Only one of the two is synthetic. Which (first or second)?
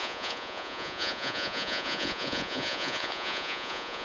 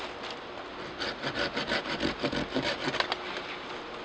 first